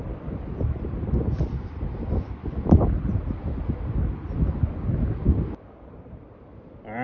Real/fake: real